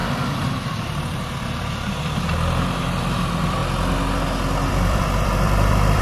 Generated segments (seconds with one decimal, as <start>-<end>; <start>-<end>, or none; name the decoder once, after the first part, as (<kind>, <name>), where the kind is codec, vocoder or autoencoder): 0.0-3.6 (vocoder, BigVGAN v2); 4.7-6.0